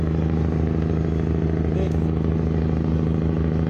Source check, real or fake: real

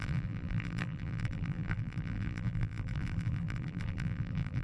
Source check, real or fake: fake